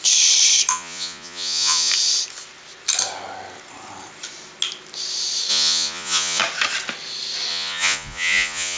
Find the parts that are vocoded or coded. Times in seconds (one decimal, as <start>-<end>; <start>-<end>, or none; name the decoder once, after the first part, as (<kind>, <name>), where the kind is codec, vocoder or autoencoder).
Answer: 0.7-1.9 (vocoder, Vocos); 5.5-6.4; 7.5-8.8